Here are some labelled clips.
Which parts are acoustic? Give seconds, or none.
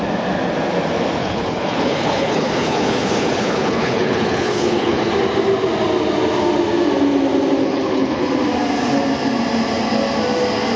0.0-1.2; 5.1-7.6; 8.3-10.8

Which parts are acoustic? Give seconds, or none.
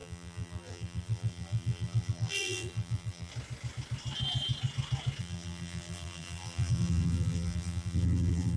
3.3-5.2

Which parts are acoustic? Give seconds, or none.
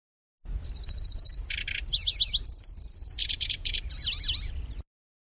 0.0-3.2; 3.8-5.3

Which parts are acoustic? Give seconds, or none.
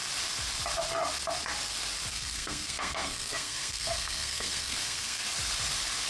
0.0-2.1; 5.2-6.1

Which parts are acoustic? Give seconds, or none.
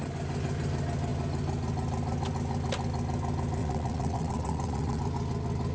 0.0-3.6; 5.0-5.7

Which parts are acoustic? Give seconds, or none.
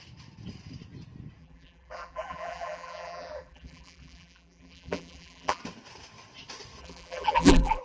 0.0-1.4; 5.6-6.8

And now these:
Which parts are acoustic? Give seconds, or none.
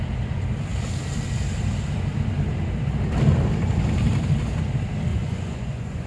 0.0-5.1